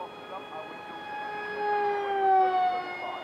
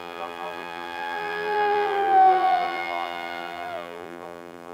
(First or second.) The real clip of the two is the first